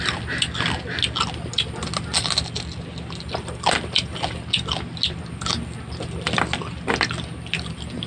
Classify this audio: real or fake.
real